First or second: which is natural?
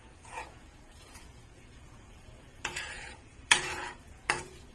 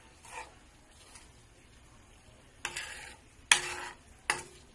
second